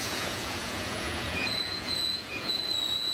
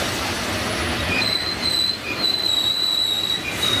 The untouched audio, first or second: second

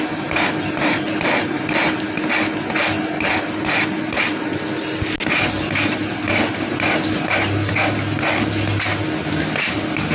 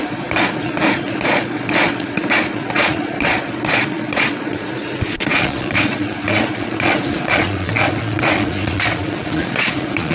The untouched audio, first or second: first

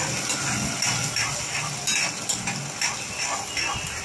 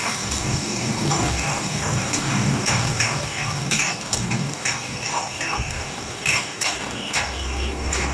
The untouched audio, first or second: first